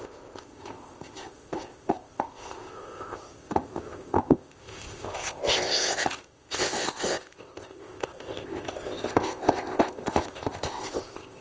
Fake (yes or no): yes